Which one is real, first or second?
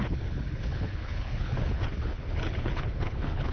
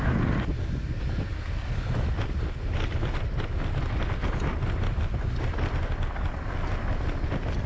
second